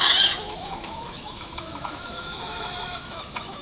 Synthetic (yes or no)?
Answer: yes